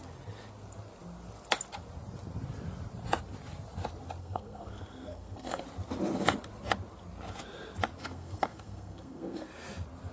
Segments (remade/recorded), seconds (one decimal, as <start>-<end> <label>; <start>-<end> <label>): 0.0-4.2 recorded; 4.2-5.6 remade; 5.6-8.0 recorded; 8.0-9.5 remade; 9.5-10.1 recorded